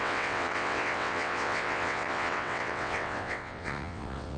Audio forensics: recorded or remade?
remade